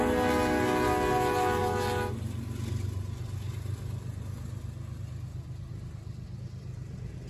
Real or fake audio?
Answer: real